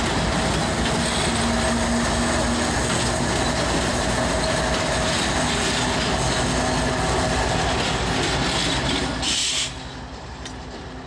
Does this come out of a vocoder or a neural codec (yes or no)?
no